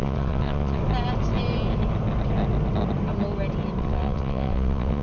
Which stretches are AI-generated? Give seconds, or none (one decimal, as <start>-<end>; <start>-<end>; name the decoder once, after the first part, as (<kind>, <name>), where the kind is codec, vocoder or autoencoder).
0.0-0.8 (vocoder, WaveNeXt); 3.8-5.0